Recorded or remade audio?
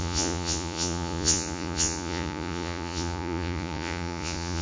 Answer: remade